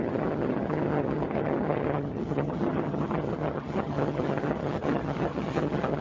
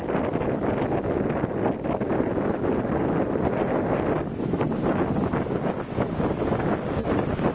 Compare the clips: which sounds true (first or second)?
second